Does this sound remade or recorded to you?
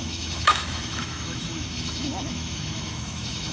remade